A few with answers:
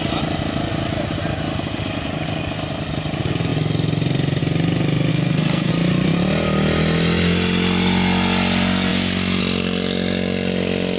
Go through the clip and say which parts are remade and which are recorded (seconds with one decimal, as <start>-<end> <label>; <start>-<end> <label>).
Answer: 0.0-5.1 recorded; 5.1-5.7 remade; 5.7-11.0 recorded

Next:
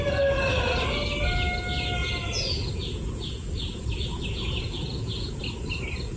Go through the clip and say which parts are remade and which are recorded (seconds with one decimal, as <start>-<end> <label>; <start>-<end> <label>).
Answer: 0.0-2.0 recorded; 2.0-5.4 remade; 5.4-6.2 recorded

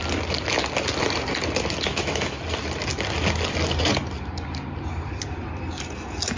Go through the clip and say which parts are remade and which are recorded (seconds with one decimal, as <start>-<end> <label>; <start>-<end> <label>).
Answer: 0.0-1.9 recorded; 1.9-2.4 remade; 2.4-6.4 recorded

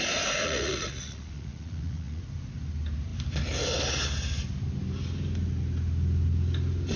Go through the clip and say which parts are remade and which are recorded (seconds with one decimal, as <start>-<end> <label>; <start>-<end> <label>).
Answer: 0.0-0.4 recorded; 0.4-2.2 remade; 2.2-7.0 recorded

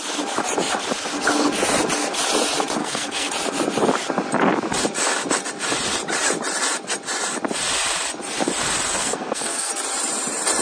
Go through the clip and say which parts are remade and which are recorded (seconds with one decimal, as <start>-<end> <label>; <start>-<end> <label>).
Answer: 0.0-2.8 recorded; 2.8-3.3 remade; 3.3-9.0 recorded; 9.0-9.7 remade; 9.7-10.6 recorded

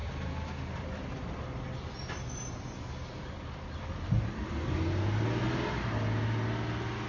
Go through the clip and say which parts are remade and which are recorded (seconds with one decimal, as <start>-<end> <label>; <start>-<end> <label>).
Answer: 0.0-3.0 recorded; 3.0-4.5 remade; 4.5-7.1 recorded